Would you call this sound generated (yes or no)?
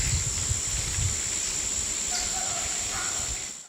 no